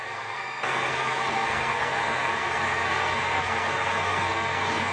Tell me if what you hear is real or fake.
fake